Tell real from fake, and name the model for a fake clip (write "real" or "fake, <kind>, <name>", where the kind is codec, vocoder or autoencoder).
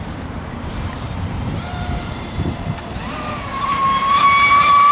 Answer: fake, vocoder, BigVGAN v2